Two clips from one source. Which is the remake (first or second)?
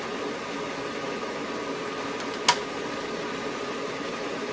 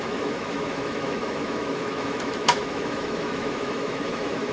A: second